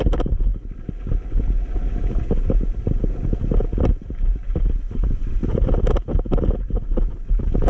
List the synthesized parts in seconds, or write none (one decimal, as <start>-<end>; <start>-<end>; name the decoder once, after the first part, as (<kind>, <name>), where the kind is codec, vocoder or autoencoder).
none